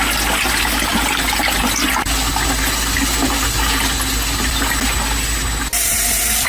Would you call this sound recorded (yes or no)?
yes